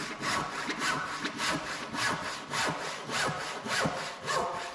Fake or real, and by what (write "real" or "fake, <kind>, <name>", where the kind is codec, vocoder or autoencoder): real